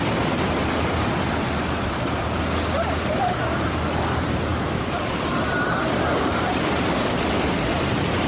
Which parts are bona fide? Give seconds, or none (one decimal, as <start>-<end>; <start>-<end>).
0.0-8.3